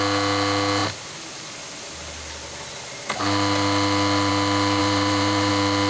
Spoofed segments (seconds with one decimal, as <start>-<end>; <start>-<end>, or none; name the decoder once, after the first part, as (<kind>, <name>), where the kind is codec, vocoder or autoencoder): 4.8-5.5 (vocoder, BigVGAN v2)